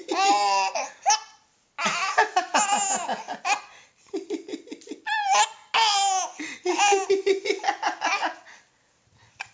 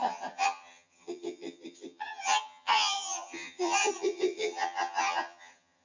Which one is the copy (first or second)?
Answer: second